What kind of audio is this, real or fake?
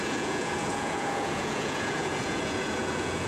fake